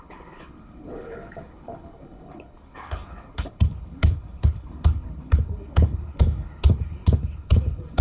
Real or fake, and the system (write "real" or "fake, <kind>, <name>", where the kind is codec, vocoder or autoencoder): fake, codec, HILCodec